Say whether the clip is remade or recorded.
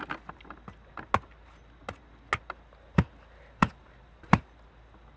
recorded